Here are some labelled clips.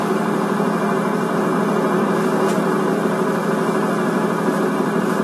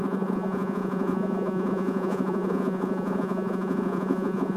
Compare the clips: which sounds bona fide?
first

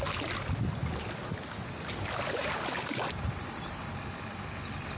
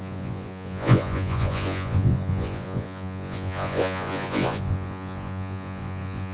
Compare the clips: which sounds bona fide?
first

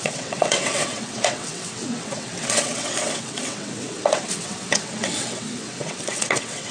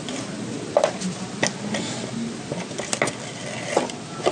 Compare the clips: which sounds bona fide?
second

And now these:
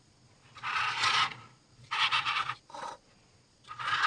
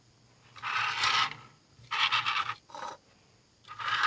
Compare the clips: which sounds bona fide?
second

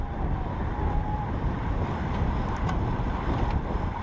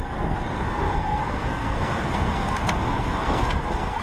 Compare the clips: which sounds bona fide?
first